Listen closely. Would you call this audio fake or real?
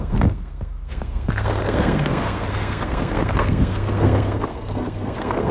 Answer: fake